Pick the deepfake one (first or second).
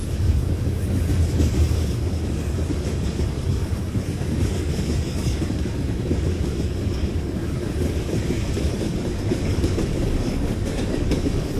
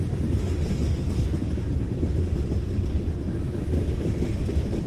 first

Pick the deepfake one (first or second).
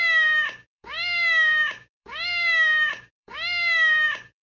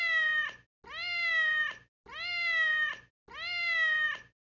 first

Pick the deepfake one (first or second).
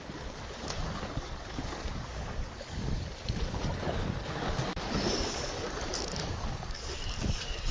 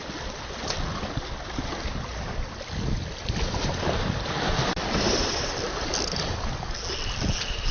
first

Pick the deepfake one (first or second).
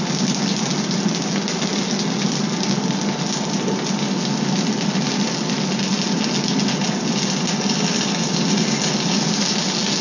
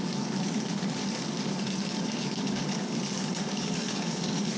second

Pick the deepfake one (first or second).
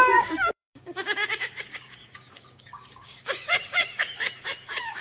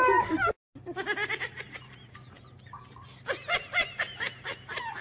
first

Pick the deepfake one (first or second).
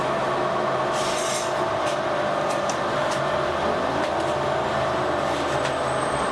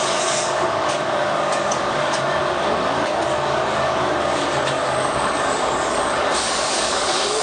second